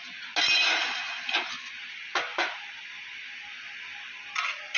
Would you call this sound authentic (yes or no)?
yes